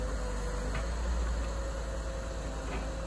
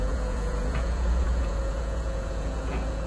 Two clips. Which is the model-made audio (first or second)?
second